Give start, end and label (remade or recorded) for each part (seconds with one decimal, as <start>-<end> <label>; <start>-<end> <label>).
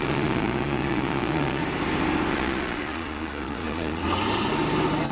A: 0.0-1.6 remade; 1.6-2.3 recorded; 2.3-4.0 remade; 4.0-5.1 recorded